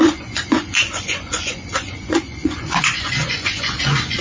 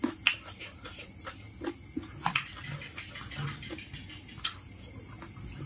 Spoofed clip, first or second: first